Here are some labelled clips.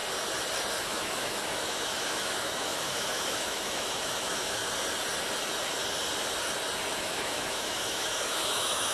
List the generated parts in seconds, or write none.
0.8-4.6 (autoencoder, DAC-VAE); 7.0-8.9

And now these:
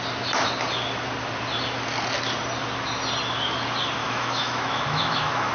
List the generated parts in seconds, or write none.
4.0-5.5 (autoencoder, DAC-VAE)